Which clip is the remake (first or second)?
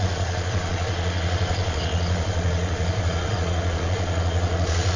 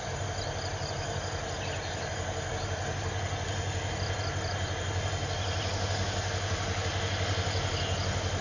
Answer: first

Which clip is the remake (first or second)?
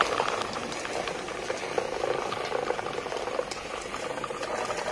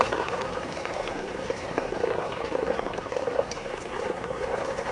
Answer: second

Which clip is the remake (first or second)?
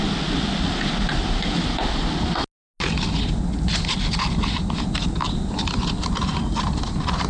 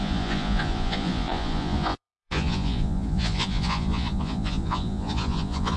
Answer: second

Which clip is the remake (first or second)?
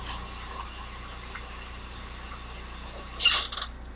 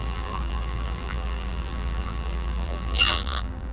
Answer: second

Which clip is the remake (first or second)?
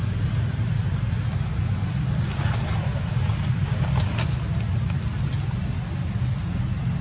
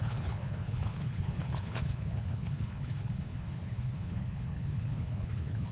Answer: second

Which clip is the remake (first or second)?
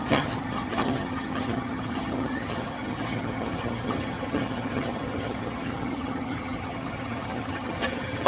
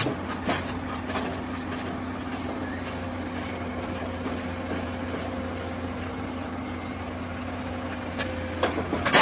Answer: first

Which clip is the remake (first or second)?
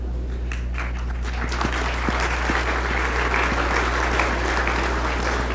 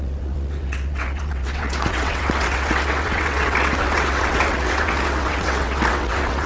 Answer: second